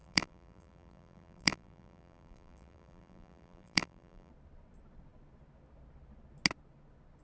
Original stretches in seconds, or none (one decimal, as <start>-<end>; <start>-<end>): 4.3-7.2